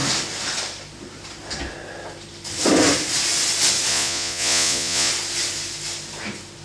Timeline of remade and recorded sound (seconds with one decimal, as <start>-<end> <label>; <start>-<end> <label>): 0.0-3.9 recorded; 3.9-5.1 remade; 5.1-6.6 recorded